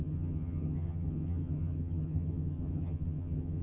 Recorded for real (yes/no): no